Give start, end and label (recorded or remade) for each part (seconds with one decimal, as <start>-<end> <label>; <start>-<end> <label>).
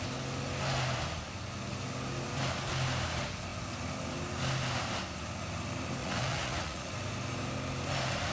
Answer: 0.0-6.0 recorded; 6.0-6.9 remade; 6.9-8.3 recorded